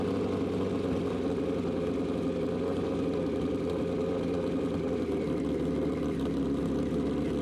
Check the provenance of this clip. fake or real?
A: real